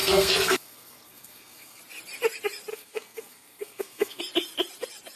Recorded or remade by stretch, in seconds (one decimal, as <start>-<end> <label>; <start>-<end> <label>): 0.0-1.8 remade; 1.8-2.7 recorded; 2.7-4.2 remade; 4.2-5.2 recorded